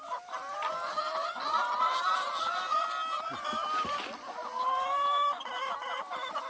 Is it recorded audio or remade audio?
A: recorded